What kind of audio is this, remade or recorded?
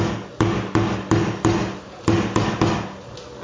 recorded